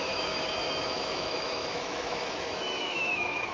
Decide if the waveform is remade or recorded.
remade